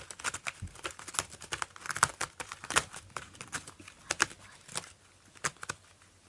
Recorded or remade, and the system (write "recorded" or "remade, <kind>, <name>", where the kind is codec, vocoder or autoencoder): recorded